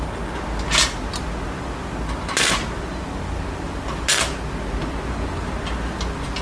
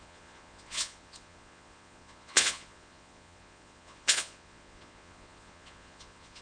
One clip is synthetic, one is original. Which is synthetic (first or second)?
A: second